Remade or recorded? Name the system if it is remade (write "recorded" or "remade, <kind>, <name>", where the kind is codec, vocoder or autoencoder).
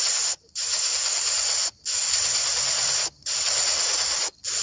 recorded